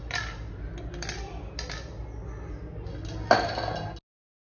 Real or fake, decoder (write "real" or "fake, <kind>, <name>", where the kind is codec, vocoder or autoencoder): real